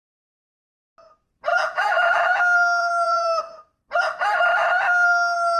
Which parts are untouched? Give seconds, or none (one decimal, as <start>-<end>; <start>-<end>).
0.0-1.5; 2.4-2.8; 3.4-5.6